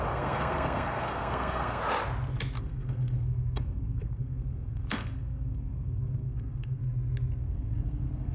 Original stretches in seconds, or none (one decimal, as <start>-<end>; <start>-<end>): 1.8-2.6; 6.8-7.4